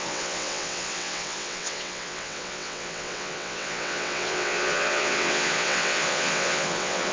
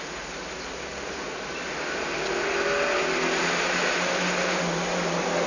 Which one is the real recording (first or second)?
second